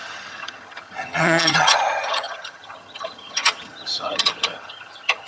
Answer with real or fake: fake